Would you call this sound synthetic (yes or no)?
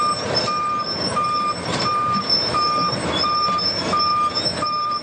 yes